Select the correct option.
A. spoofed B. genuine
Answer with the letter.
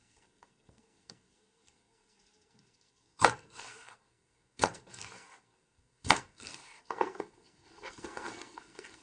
A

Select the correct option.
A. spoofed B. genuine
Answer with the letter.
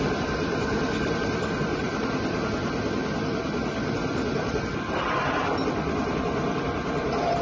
A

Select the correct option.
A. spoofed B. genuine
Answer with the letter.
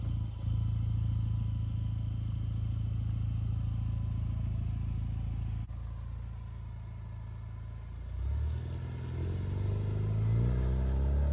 B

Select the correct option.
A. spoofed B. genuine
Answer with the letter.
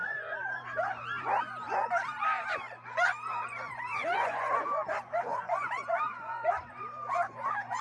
A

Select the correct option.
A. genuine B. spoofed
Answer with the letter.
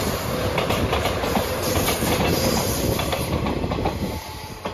B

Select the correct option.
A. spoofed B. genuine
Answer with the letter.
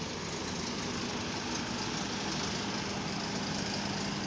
B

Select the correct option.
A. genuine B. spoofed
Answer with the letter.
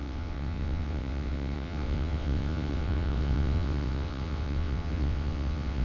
B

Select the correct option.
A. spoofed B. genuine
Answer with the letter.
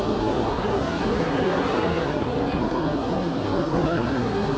A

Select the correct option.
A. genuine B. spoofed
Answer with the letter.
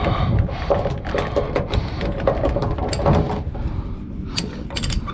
A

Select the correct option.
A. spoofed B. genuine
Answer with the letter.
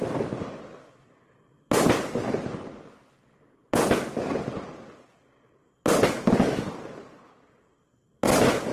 B